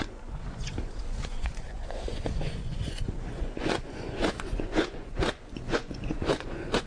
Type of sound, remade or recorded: remade